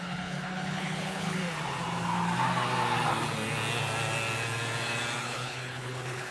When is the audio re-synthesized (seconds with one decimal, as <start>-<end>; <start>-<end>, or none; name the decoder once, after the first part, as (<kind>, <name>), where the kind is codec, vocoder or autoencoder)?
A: 0.0-1.4 (codec, HILCodec); 5.2-6.3